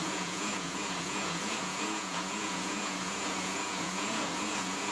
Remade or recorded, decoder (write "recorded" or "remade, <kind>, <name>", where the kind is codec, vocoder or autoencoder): remade, vocoder, Vocos